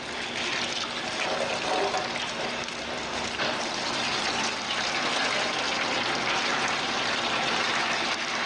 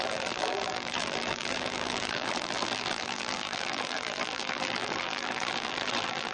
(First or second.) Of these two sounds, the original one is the first